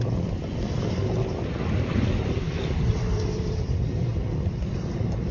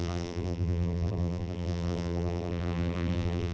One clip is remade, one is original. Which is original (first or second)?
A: first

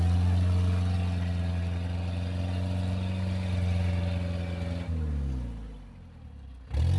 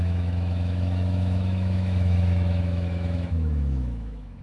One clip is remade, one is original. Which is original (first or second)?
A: first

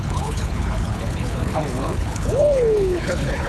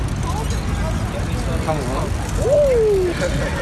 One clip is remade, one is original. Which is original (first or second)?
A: second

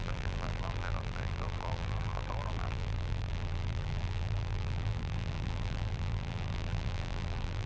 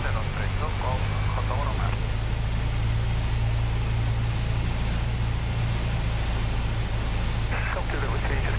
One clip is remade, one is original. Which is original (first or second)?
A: second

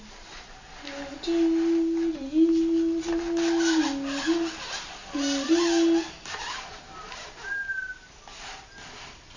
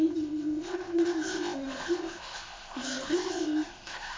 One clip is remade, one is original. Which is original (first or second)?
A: first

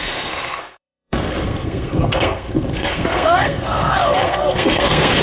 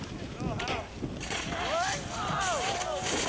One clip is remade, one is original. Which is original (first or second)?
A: second